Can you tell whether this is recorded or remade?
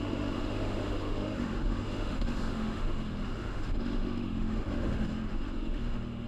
remade